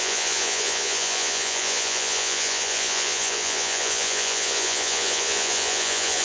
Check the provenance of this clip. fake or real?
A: fake